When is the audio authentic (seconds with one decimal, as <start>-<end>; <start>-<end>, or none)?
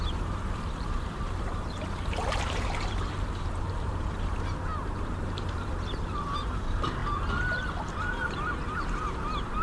7.0-8.0